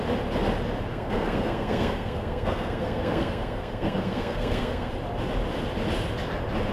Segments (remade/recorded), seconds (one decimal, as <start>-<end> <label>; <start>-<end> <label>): 0.0-0.9 recorded; 0.9-4.9 remade; 4.9-6.7 recorded